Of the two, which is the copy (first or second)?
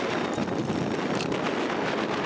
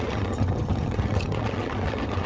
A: second